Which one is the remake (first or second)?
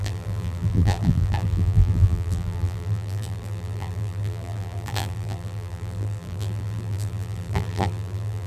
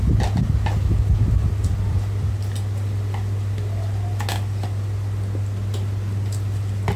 first